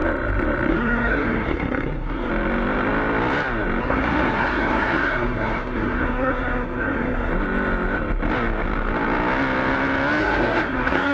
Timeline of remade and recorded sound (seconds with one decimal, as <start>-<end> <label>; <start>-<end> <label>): 0.0-0.7 recorded; 0.7-2.3 remade; 2.3-3.8 recorded; 3.8-7.3 remade; 7.3-10.2 recorded; 10.2-11.1 remade